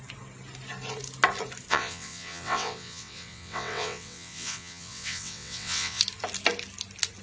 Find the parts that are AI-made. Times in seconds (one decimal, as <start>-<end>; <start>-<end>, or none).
1.7-6.0